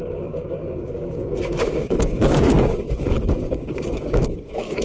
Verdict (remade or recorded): remade